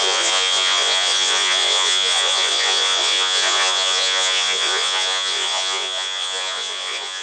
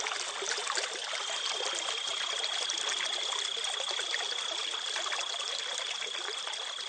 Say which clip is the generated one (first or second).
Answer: first